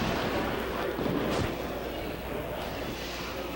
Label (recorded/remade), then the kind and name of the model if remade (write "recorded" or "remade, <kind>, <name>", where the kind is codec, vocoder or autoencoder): recorded